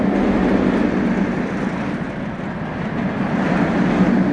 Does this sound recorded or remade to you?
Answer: recorded